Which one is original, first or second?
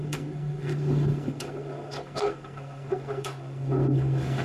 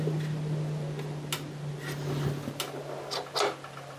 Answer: second